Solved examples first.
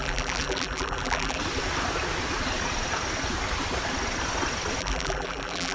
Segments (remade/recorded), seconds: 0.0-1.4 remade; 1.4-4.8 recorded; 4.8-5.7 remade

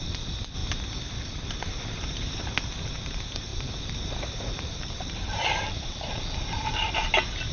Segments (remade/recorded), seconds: 0.0-3.5 recorded; 3.5-6.9 remade; 6.9-7.5 recorded

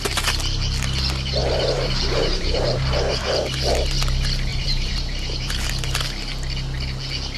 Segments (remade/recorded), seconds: 0.0-1.4 recorded; 1.4-3.2 remade; 3.2-4.5 recorded; 4.5-5.7 remade; 5.7-7.4 recorded

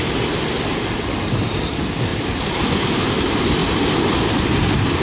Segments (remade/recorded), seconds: 0.0-2.1 recorded; 2.1-2.9 remade; 2.9-3.6 recorded; 3.6-4.1 remade; 4.1-5.0 recorded

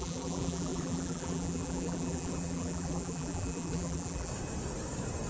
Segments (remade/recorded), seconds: 0.0-4.3 remade; 4.3-5.3 recorded